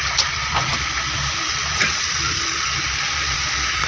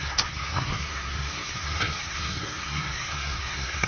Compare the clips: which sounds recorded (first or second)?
first